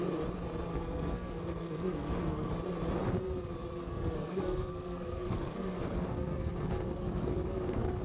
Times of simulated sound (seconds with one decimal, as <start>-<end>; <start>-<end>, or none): 0.7-2.5; 3.8-8.0